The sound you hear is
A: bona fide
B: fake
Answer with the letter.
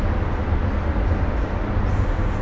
A